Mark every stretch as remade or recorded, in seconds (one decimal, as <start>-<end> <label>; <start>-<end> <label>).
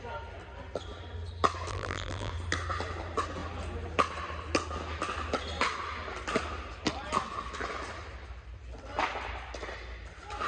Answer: 0.0-1.7 recorded; 1.7-2.3 remade; 2.3-10.5 recorded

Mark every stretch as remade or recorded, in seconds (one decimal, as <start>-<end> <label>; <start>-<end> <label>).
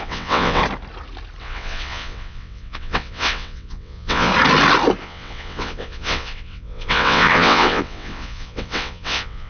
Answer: 0.0-0.6 remade; 0.6-1.4 recorded; 1.4-4.3 remade; 4.3-5.0 recorded; 5.0-9.5 remade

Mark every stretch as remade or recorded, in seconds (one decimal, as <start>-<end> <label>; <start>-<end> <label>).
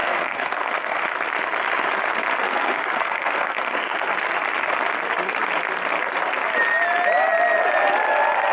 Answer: 0.0-1.0 remade; 1.0-2.4 recorded; 2.4-4.1 remade; 4.1-8.5 recorded